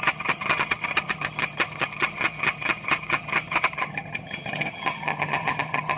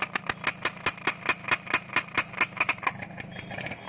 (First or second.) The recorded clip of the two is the second